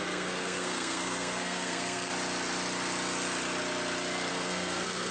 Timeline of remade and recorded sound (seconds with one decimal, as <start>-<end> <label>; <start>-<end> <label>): 0.0-2.1 remade; 2.1-4.3 recorded; 4.3-5.1 remade